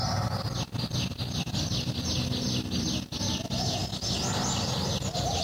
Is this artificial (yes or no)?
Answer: no